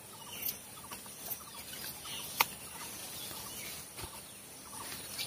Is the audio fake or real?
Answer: real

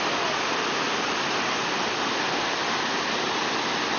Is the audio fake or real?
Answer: real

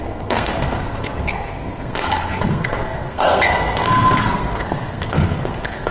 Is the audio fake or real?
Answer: fake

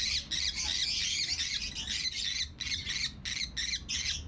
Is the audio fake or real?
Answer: real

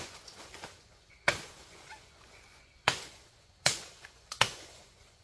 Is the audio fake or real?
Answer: fake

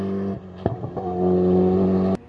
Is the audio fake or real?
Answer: real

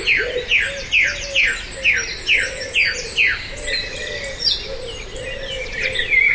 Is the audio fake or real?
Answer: real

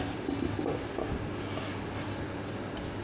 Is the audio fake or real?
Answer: real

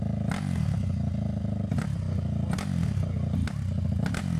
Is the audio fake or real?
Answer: real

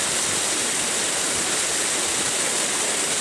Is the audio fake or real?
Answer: real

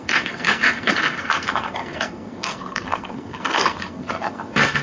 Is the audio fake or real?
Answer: fake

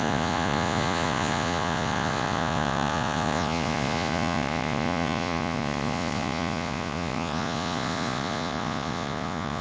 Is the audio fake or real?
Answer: fake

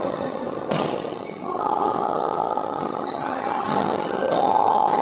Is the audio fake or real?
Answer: fake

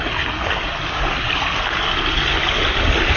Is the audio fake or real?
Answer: real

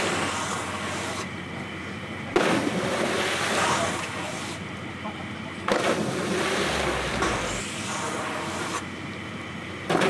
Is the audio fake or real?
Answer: real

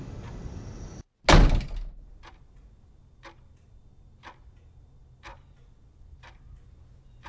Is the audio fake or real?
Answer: real